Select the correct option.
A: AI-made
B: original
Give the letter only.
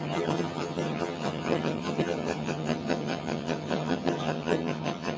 A